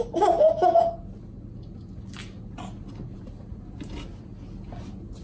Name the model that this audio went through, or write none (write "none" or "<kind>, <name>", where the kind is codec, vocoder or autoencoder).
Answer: none